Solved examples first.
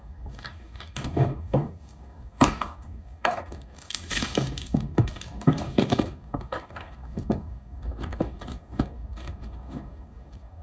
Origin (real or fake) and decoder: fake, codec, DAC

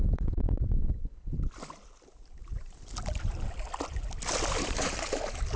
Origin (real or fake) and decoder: real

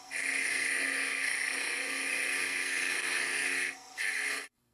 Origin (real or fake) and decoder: fake, codec, SNAC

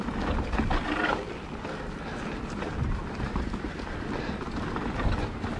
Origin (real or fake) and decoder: real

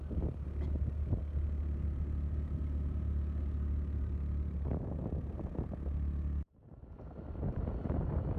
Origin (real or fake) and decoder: real